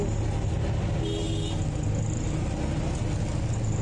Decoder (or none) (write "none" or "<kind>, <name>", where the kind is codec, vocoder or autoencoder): none